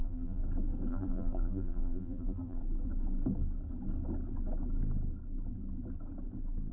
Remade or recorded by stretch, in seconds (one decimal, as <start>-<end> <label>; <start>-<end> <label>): 0.0-0.4 remade; 0.4-0.9 recorded; 0.9-2.6 remade; 2.6-6.7 recorded